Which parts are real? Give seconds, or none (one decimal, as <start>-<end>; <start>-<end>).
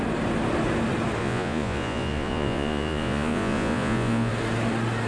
0.0-1.2; 4.3-5.1